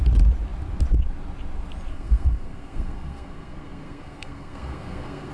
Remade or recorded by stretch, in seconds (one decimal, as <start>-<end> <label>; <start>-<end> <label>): 0.0-1.9 recorded; 1.9-5.3 remade